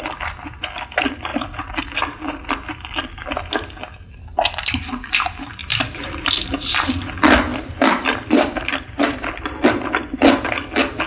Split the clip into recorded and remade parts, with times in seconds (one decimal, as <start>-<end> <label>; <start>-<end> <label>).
0.0-1.3 recorded; 1.3-2.5 remade; 2.5-5.6 recorded; 5.6-6.7 remade; 6.7-7.5 recorded; 7.5-9.7 remade; 9.7-11.1 recorded